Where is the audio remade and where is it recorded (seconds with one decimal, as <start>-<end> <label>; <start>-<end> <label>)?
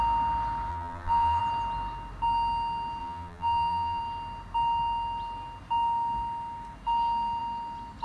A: 0.0-0.7 recorded; 0.7-1.4 remade; 1.4-3.0 recorded; 3.0-4.0 remade; 4.0-8.0 recorded